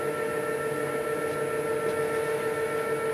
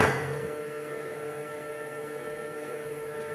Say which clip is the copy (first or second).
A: second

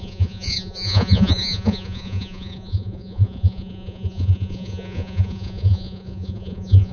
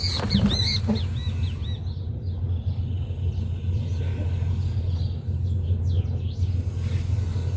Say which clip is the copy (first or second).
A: first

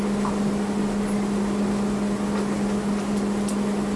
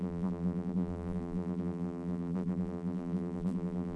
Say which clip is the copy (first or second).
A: second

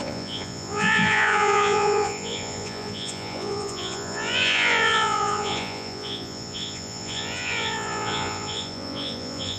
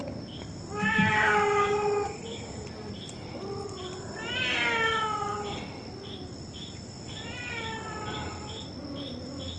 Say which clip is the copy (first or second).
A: first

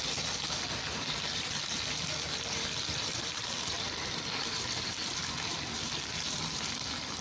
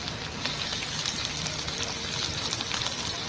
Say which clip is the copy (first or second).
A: first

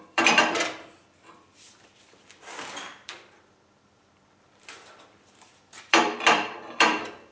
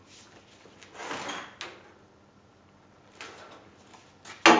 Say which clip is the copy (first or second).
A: first